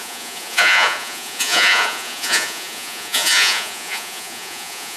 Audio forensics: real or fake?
fake